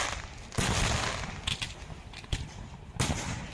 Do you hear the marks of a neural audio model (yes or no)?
no